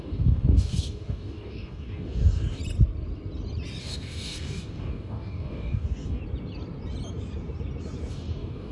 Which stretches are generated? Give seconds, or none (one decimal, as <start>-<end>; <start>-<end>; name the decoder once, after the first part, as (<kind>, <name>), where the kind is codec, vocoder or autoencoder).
0.0-2.6 (codec, DAC); 3.8-6.2; 8.1-8.7